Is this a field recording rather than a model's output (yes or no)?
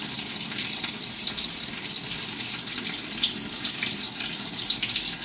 yes